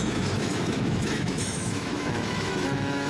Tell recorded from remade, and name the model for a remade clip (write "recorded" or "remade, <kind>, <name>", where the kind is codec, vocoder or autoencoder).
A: remade, autoencoder, DAC-VAE